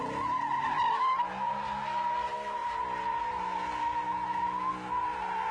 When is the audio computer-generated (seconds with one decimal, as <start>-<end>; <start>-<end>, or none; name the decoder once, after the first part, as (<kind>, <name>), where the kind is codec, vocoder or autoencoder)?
none